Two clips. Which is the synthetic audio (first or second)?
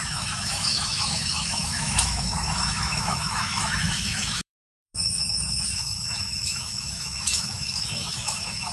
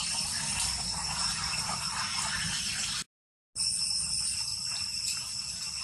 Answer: first